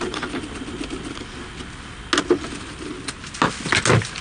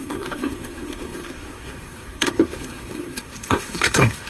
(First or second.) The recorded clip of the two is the first